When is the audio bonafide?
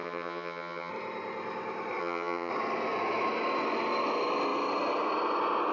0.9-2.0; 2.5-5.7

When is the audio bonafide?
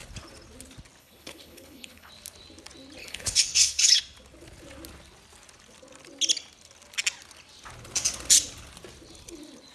0.0-1.0; 2.1-3.0; 4.0-9.7